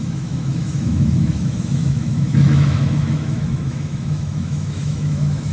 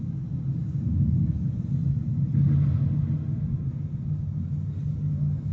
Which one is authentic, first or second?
second